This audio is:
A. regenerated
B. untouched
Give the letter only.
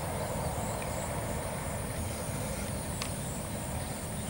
B